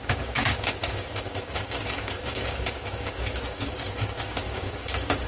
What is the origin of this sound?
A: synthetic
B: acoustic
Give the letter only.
A